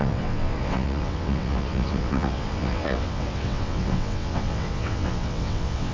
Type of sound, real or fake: fake